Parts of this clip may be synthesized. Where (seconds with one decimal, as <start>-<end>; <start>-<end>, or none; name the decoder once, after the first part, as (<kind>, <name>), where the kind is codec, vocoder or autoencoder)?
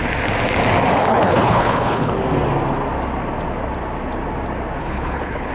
1.1-2.1 (codec, HILCodec); 4.8-5.5